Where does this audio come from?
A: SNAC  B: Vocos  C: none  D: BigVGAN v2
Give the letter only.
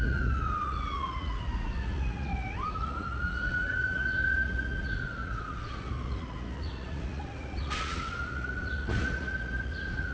B